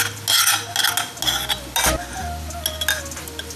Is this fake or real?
real